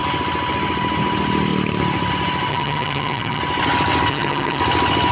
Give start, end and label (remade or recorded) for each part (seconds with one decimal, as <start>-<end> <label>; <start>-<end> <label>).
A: 0.0-2.5 recorded; 2.5-3.4 remade; 3.4-4.1 recorded; 4.1-4.6 remade; 4.6-5.1 recorded